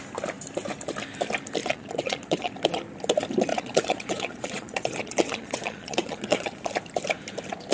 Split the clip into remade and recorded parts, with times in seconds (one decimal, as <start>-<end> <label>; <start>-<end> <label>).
0.0-1.6 recorded; 1.6-2.5 remade; 2.5-3.5 recorded; 3.5-6.7 remade; 6.7-7.7 recorded